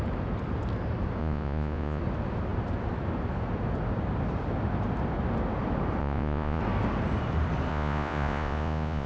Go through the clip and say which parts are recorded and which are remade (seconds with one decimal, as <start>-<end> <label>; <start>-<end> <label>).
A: 0.0-1.2 recorded; 1.2-2.0 remade; 2.0-6.0 recorded; 6.0-6.6 remade; 6.6-7.7 recorded; 7.7-9.1 remade